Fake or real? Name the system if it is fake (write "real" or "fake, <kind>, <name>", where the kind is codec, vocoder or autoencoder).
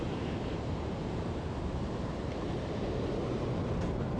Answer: fake, vocoder, BigVGAN v2